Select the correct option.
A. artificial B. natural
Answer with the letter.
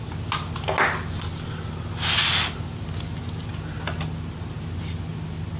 B